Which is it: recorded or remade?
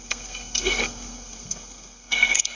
remade